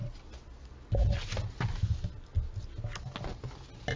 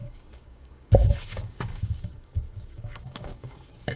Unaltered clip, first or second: first